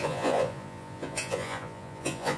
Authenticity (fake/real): fake